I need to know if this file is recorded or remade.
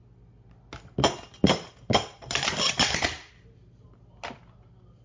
recorded